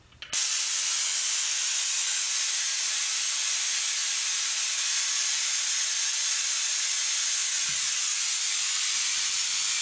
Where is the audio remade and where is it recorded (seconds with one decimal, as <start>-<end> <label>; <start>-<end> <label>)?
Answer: 0.0-9.8 recorded